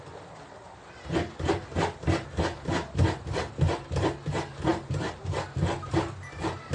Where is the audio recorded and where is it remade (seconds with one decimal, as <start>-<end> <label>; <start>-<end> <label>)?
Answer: 0.0-6.7 recorded